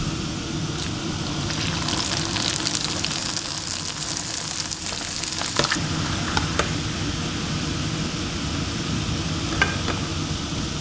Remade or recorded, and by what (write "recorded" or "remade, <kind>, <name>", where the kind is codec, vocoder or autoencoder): recorded